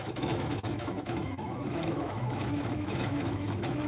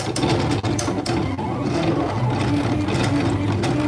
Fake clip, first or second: first